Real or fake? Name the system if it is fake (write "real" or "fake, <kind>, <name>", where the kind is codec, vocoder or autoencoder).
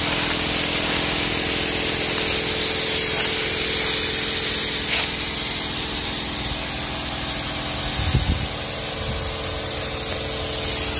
real